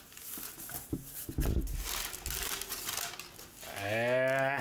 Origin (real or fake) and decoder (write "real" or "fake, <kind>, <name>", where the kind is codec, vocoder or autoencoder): real